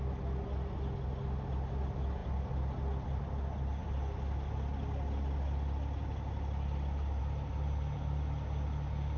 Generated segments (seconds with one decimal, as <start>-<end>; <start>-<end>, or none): none